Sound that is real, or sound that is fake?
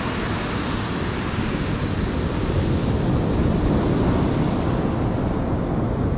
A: real